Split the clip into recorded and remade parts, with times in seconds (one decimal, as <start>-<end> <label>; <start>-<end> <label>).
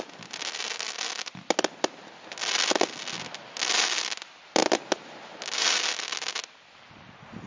0.0-7.5 recorded